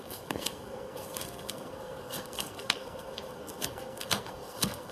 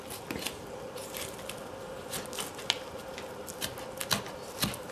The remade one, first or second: first